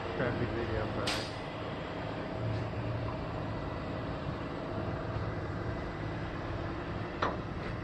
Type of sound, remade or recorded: remade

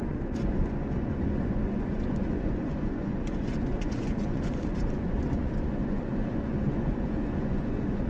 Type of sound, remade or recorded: remade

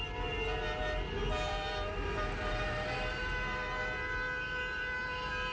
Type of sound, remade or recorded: recorded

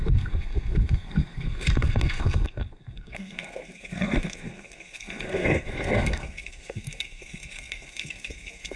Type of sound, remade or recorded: remade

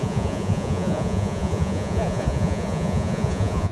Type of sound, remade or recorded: remade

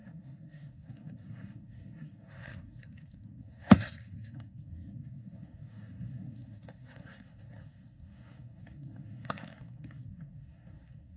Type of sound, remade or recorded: remade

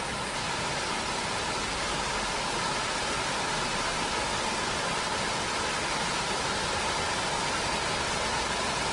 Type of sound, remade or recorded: recorded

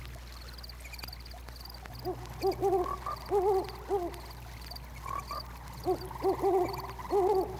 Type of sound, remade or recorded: recorded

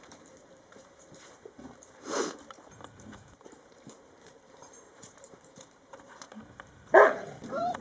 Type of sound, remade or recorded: remade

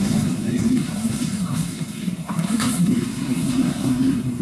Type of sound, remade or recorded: remade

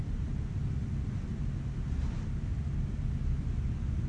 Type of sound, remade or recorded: recorded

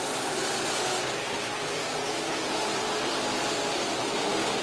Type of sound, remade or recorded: recorded